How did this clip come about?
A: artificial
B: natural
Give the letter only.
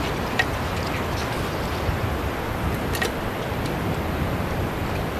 B